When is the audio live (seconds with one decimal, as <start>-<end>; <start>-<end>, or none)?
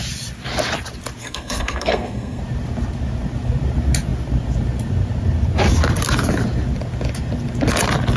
0.0-1.2; 2.4-8.2